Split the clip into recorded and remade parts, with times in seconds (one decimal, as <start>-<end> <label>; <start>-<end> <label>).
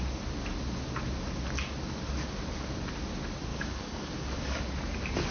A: 0.0-3.5 recorded; 3.5-4.6 remade; 4.6-5.3 recorded